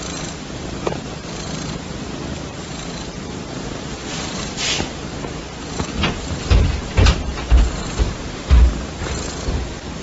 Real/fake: fake